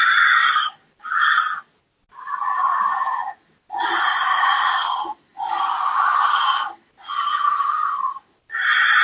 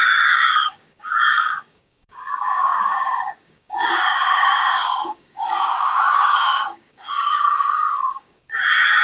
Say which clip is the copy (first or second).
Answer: second